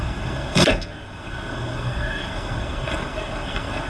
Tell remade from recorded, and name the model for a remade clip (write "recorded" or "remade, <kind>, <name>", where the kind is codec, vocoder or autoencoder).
remade, codec, SNAC